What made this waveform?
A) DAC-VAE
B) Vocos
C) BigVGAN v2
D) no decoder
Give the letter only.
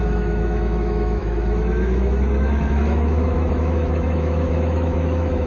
A